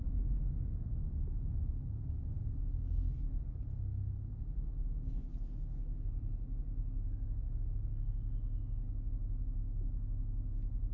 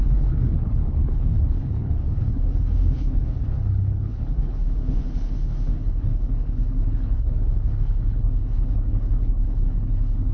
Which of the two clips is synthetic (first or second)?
second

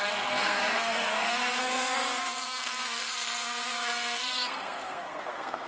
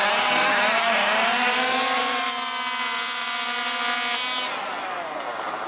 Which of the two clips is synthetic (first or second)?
first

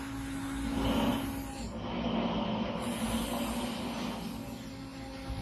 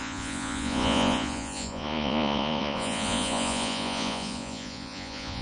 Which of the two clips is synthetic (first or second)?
second